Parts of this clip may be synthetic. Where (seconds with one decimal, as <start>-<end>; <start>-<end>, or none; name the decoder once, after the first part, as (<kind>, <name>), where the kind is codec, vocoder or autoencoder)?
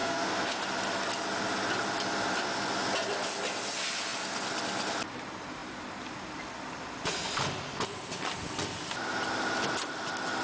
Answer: 0.0-0.6 (codec, SNAC)